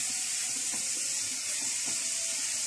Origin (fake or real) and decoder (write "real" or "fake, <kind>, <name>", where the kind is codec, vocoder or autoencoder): real